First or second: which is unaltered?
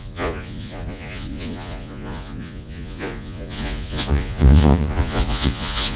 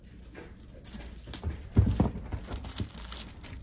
second